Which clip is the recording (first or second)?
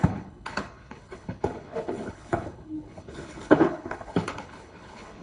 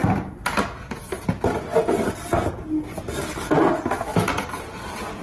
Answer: second